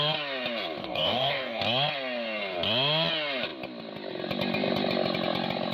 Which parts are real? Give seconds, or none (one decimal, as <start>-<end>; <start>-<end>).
0.0-0.8; 1.6-5.7